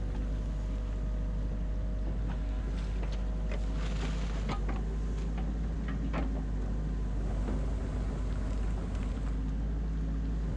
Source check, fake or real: real